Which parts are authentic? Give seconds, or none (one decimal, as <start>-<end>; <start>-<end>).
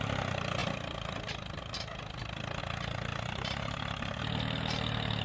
0.0-3.1; 4.2-5.2